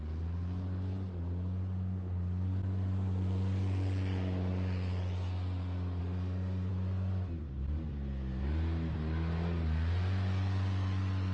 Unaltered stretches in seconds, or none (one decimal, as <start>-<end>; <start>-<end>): 0.0-6.0; 6.7-11.3